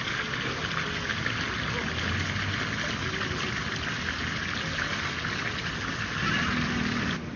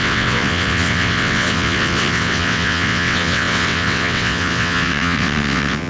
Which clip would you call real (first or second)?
first